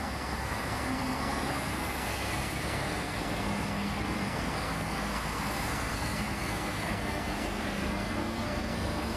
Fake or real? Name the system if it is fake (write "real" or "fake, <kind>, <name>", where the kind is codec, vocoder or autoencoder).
fake, codec, SNAC